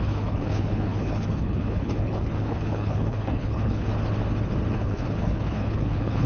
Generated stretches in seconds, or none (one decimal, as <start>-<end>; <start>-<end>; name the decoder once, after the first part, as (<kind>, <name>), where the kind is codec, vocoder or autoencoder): 0.0-3.9 (codec, HILCodec); 4.7-6.3